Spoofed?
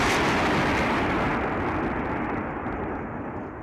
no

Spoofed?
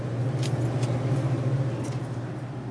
no